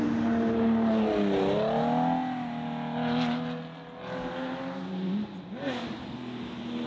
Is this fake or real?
real